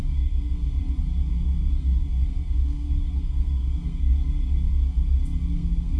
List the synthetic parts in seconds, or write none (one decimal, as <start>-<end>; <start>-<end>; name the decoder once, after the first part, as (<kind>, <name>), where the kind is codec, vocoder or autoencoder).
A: 0.0-0.8 (codec, SNAC); 1.3-4.1; 5.5-6.0